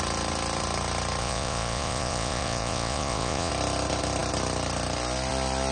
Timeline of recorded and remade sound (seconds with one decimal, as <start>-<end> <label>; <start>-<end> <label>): 0.0-1.2 recorded; 1.2-3.5 remade; 3.5-5.7 recorded